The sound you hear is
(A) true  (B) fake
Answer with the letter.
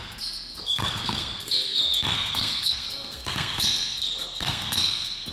B